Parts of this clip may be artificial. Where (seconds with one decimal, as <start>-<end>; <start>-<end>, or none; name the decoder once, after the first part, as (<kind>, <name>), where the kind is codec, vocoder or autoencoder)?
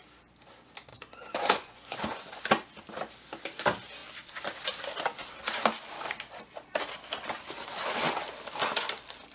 0.9-2.4 (vocoder, Vocos)